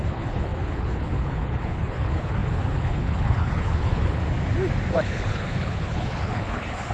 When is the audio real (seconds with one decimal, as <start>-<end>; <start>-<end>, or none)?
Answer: 4.2-4.9